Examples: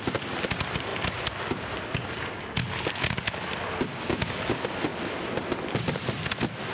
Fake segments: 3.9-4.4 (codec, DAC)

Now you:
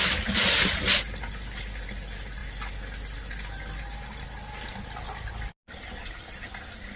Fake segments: none